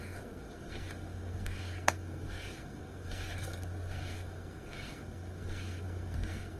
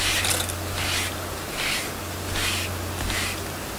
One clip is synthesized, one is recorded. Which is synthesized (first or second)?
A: first